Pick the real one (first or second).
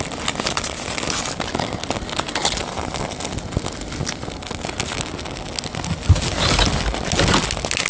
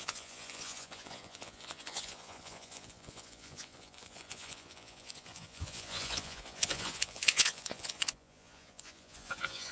first